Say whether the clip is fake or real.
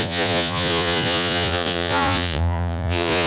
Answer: fake